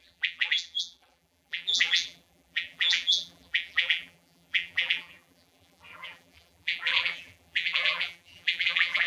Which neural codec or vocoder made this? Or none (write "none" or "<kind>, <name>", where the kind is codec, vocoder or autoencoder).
vocoder, BigVGAN v2